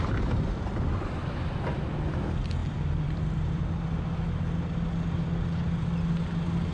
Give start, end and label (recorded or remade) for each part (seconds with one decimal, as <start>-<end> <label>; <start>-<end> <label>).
0.0-2.6 recorded; 2.6-3.6 remade; 3.6-6.7 recorded

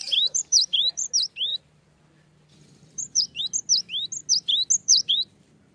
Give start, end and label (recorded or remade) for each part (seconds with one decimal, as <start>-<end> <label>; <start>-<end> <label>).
0.0-1.1 remade; 1.1-1.5 recorded; 1.5-3.4 remade; 3.4-4.8 recorded; 4.8-5.7 remade

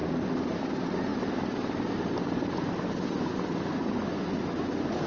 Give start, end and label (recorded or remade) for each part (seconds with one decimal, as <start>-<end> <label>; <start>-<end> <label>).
0.0-0.6 remade; 0.6-1.1 recorded; 1.1-3.3 remade; 3.3-5.1 recorded

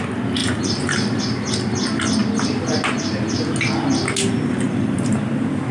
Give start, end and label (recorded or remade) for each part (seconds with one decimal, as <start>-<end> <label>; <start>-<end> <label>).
0.0-0.4 recorded; 0.4-1.2 remade; 1.2-5.7 recorded

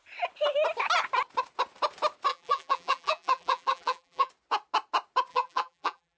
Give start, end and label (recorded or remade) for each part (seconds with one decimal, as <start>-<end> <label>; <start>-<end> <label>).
0.0-2.3 recorded; 2.3-4.3 remade; 4.3-5.3 recorded; 5.3-6.2 remade